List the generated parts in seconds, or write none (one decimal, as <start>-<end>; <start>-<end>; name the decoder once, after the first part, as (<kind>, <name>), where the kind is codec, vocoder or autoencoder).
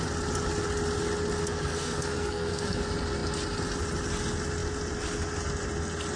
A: 1.4-2.8 (codec, SNAC)